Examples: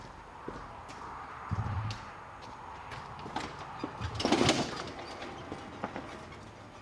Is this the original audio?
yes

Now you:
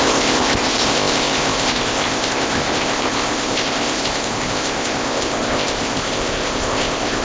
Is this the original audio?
no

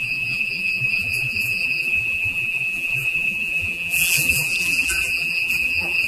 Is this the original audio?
no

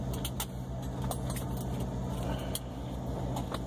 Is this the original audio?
yes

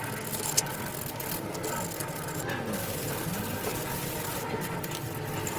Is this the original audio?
yes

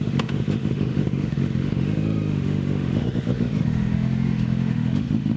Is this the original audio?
no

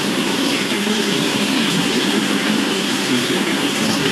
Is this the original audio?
no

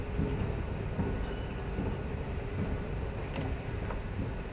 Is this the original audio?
yes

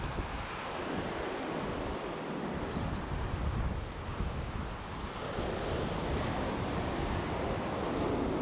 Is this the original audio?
yes